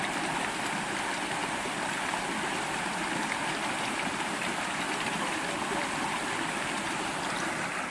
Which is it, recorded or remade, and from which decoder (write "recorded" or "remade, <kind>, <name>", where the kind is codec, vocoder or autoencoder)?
recorded